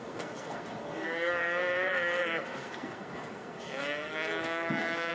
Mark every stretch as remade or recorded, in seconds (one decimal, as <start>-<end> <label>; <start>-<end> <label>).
0.0-5.1 remade